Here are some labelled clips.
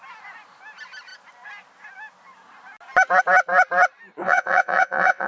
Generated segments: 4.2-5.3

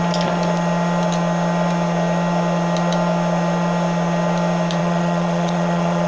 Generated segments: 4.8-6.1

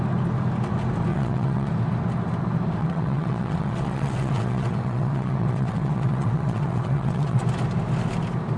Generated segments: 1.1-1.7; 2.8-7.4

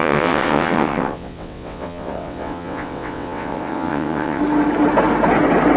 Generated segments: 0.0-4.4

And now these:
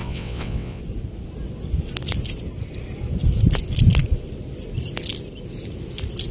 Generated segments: 0.0-0.8